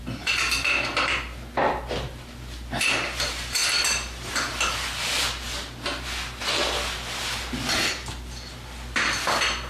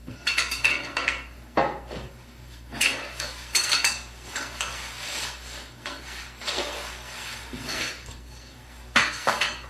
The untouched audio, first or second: first